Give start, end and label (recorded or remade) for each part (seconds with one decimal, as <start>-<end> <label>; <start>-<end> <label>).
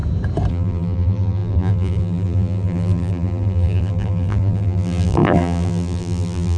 0.0-0.5 recorded; 0.5-6.6 remade